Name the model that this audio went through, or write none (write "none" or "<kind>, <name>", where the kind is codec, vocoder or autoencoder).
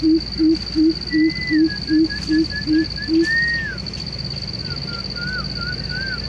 none